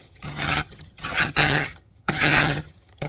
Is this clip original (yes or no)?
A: no